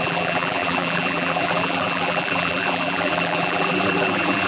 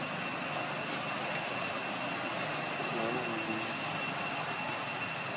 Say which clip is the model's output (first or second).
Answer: first